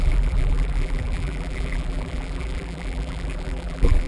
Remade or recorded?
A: remade